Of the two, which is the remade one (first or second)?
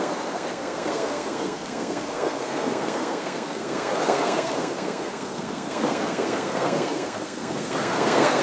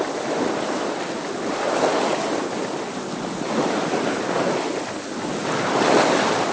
first